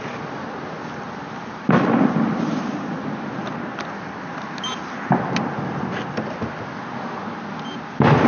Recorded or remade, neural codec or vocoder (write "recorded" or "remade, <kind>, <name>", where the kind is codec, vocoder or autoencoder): recorded